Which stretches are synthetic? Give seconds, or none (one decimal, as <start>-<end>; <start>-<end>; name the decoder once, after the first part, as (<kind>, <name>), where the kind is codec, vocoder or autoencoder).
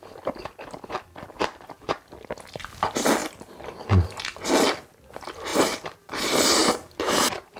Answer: 1.4-2.0 (vocoder, BigVGAN v2); 5.5-6.1; 6.6-7.6